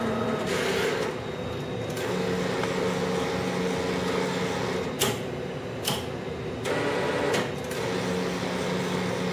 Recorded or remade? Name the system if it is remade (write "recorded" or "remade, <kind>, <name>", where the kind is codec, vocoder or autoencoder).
recorded